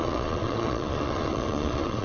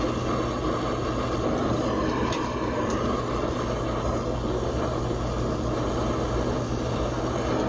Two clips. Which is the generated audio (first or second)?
first